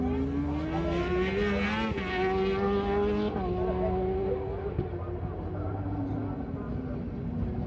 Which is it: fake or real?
real